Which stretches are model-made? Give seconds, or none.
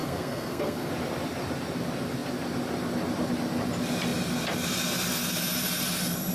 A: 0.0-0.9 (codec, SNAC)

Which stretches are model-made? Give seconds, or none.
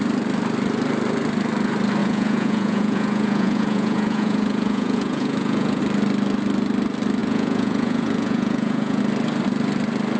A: 2.0-5.8 (vocoder, Vocos); 7.2-9.0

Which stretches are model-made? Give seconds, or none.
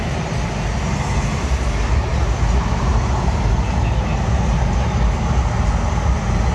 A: none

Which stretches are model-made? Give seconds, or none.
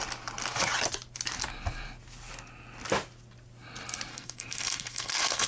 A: 4.1-5.5 (codec, SNAC)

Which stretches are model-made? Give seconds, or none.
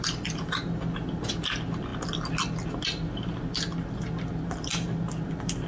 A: none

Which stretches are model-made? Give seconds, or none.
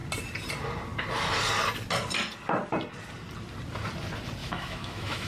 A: 4.4-5.3 (autoencoder, DAC-VAE)